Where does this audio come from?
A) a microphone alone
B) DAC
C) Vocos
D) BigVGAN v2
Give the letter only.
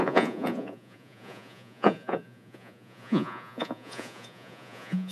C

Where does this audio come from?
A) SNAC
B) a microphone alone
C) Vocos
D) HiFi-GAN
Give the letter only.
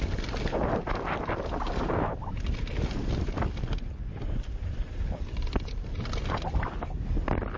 B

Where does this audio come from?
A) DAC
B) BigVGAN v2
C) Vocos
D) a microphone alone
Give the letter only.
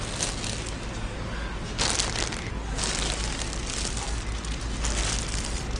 D